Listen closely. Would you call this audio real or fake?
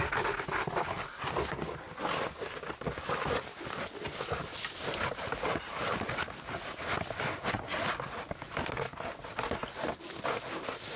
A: real